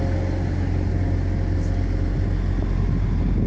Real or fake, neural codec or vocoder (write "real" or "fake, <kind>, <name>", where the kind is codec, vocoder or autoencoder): real